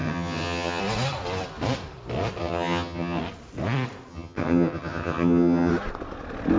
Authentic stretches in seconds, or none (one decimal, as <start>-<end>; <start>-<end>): 0.8-2.4; 3.2-4.1; 5.7-6.6